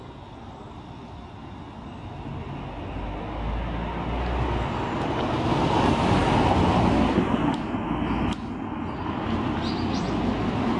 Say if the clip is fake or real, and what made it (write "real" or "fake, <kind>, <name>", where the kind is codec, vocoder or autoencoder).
real